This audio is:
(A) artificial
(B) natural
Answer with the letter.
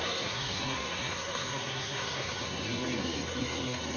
A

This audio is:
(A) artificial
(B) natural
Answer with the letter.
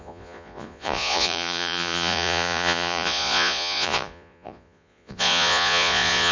A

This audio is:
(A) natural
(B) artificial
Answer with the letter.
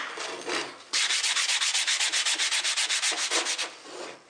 A